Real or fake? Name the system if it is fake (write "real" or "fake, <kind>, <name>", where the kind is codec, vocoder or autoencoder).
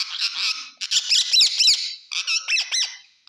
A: real